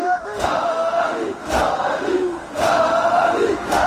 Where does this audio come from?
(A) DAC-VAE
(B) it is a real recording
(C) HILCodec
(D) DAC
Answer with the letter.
A